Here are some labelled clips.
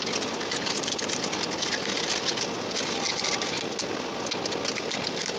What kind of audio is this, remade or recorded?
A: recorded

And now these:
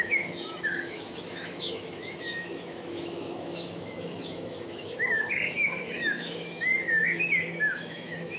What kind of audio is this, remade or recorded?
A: remade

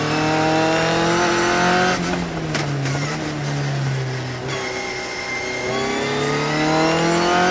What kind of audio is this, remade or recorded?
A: recorded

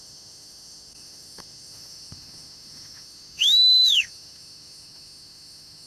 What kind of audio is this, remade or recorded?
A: remade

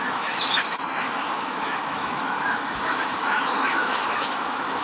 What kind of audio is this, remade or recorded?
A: remade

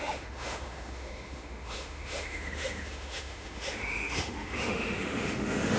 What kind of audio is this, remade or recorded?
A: remade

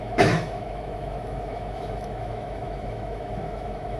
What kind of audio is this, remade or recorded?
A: remade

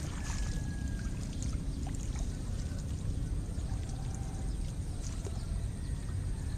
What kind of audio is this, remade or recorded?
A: recorded